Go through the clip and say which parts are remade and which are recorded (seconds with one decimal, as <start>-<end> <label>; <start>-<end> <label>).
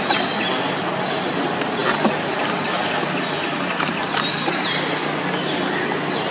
0.0-6.3 recorded